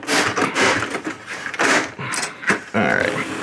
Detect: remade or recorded recorded